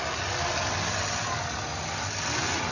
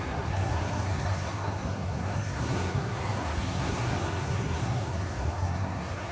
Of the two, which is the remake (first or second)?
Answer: second